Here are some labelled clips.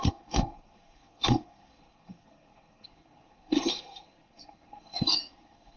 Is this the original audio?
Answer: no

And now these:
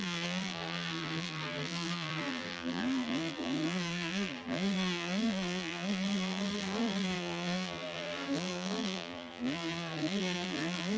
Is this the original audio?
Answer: no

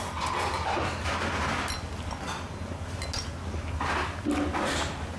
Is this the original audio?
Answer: yes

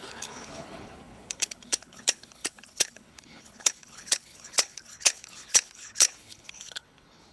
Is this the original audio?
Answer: no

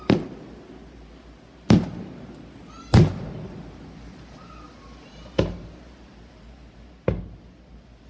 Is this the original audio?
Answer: yes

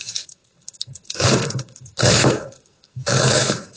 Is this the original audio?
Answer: no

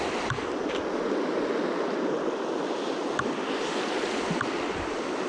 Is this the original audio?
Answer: yes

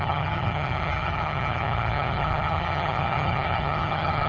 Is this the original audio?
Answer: no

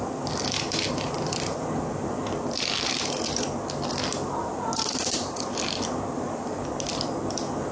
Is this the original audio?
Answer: yes